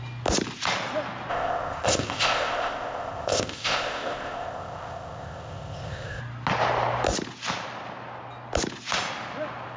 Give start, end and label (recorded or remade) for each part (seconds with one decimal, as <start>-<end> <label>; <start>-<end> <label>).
0.0-1.3 recorded; 1.3-6.2 remade; 6.2-9.8 recorded